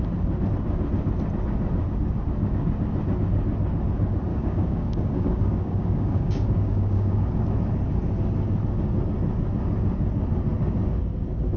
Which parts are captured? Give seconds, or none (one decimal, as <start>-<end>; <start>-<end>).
0.0-4.3; 7.4-11.6

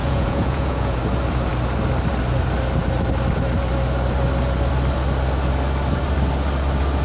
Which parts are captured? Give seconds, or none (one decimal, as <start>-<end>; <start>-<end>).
1.0-7.0